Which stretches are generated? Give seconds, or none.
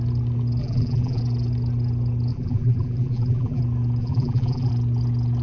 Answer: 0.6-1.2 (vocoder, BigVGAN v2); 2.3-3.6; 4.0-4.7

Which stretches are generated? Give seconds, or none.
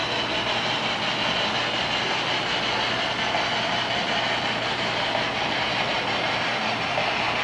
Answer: 4.4-7.4 (vocoder, BigVGAN v2)